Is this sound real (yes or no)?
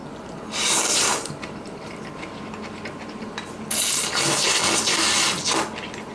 yes